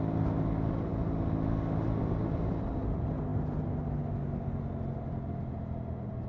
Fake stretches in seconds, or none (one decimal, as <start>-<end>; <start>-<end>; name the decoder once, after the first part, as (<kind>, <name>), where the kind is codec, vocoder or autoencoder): none